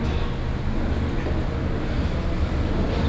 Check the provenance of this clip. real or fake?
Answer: real